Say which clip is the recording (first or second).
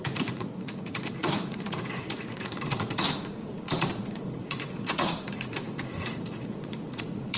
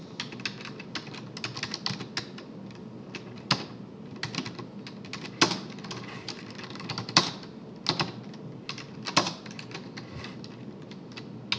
second